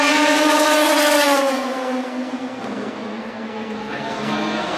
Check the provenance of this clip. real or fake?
fake